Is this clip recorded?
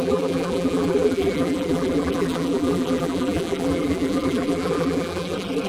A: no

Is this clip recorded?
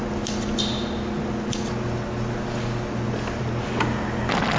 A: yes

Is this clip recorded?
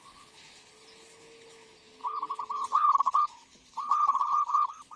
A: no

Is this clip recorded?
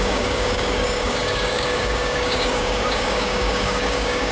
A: no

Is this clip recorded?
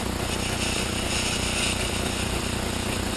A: no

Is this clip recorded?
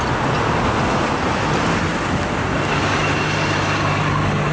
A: yes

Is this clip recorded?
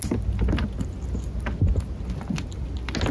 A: yes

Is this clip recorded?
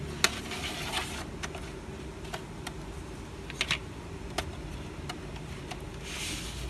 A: yes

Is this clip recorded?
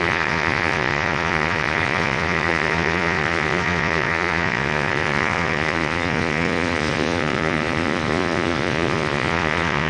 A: no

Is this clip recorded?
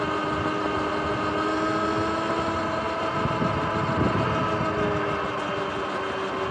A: yes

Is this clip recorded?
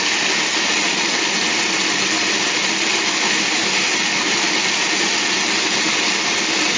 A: yes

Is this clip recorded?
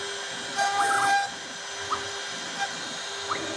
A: yes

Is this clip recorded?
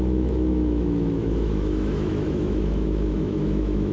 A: no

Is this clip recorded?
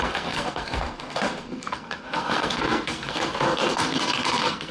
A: no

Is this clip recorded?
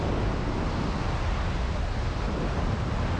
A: yes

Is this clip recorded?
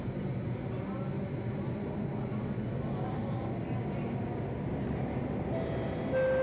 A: yes